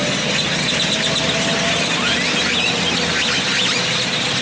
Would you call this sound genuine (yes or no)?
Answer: yes